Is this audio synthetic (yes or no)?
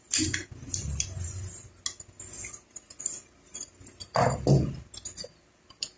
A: no